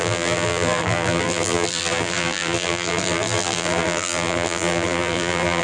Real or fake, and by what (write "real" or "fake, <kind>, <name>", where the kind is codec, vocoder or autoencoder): fake, vocoder, BigVGAN v2